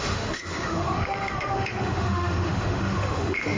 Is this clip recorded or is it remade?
remade